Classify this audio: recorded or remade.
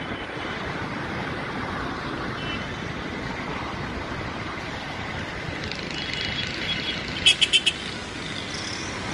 recorded